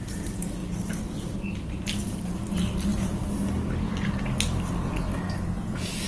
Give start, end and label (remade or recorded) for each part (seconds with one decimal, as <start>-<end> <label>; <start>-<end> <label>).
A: 0.0-6.1 recorded